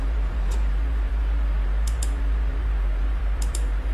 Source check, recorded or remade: remade